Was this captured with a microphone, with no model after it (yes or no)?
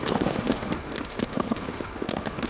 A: no